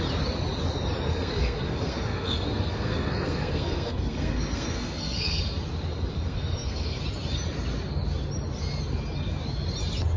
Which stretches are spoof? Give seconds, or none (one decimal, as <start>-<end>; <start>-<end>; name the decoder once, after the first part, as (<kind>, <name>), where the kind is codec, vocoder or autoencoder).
1.1-5.4 (codec, SNAC); 6.1-7.0